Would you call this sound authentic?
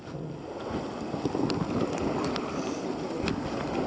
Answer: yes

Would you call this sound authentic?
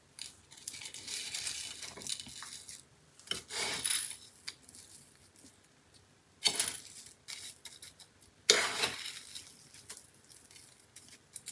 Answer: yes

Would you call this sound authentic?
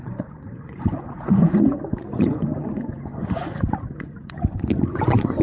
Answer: no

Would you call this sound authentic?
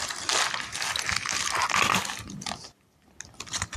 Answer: yes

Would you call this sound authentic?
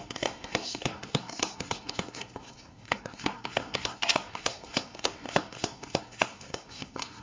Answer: no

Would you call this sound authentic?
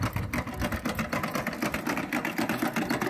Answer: yes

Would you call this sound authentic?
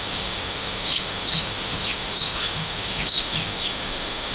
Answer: no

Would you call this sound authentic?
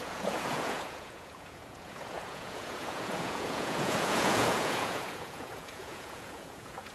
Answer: no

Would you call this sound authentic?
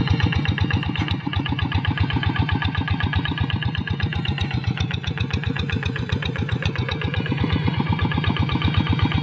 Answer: no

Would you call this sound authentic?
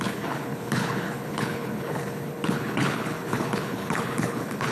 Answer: no